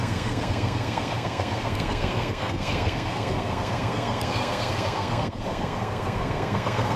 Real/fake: fake